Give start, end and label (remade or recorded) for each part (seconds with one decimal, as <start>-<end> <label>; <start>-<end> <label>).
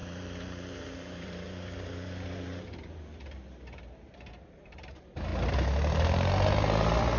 0.0-5.3 remade; 5.3-7.2 recorded